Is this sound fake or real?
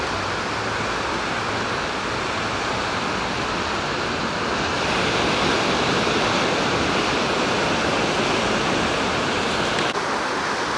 real